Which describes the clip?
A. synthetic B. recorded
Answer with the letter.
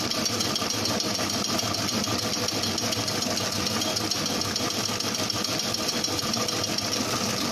B